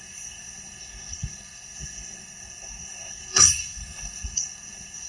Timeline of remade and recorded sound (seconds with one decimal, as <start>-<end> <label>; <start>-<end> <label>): 0.0-5.1 remade